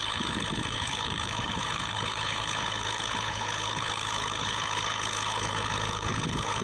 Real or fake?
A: fake